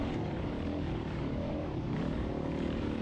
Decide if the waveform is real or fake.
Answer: fake